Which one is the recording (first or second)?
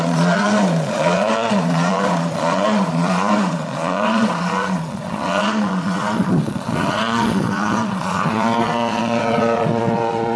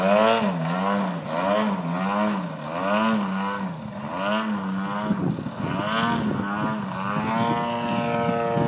second